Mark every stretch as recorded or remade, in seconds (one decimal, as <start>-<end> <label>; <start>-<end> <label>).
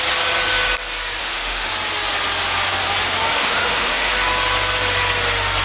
0.0-1.2 recorded; 1.2-1.7 remade; 1.7-3.3 recorded; 3.3-4.1 remade; 4.1-5.6 recorded